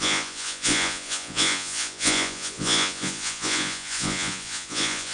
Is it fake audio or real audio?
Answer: fake